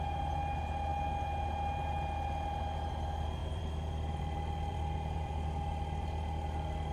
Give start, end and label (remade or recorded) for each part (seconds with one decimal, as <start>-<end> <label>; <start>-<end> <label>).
0.0-3.4 recorded; 3.4-4.2 remade; 4.2-4.7 recorded; 4.7-5.3 remade; 5.3-6.9 recorded